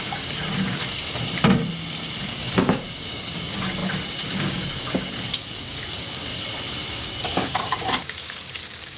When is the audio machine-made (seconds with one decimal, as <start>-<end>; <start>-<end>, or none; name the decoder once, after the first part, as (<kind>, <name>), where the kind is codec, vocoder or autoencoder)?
0.0-0.8 (codec, DAC); 2.3-6.3; 6.9-9.0